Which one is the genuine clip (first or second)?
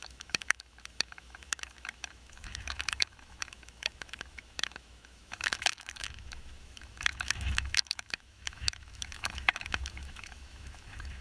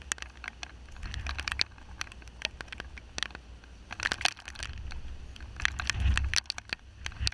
second